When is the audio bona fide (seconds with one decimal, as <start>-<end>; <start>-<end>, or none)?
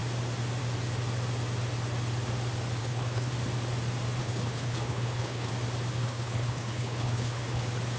0.0-2.8; 3.3-4.2; 5.5-5.9; 7.6-8.0